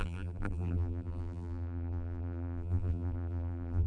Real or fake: fake